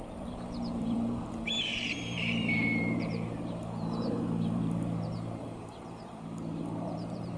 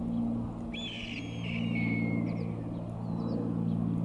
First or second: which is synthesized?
first